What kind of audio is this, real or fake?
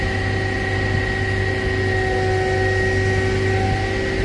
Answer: real